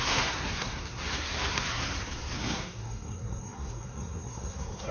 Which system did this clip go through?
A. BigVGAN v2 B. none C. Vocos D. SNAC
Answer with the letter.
D